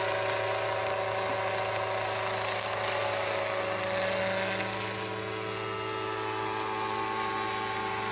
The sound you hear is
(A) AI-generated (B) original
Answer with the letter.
B